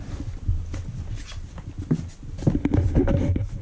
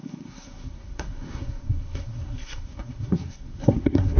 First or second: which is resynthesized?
second